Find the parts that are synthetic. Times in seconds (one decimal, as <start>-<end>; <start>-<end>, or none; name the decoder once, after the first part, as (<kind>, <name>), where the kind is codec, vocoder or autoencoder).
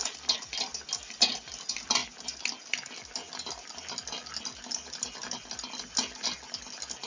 none